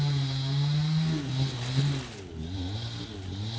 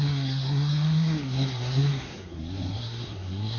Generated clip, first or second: second